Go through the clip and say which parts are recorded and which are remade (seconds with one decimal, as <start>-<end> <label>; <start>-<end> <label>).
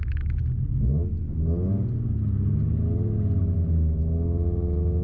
0.0-0.4 remade; 0.4-3.4 recorded; 3.4-5.0 remade